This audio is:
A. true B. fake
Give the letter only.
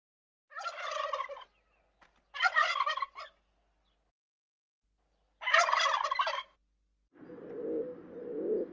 A